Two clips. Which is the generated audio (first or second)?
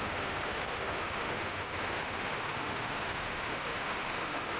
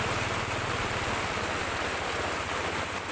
first